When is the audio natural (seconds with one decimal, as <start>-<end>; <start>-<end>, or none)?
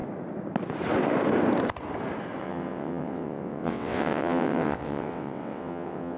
0.0-2.4